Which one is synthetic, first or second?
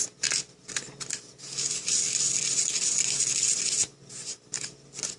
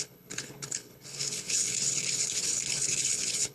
second